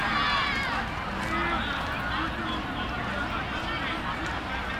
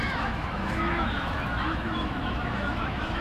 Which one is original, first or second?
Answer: first